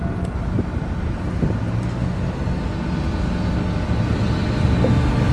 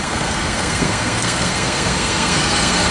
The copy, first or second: second